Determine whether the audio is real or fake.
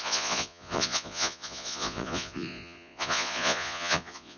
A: fake